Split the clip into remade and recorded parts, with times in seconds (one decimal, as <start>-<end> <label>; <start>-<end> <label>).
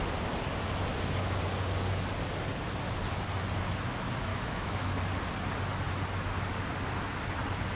0.0-4.3 recorded; 4.3-5.0 remade; 5.0-7.8 recorded